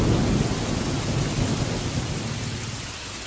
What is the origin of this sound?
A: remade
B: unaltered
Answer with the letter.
B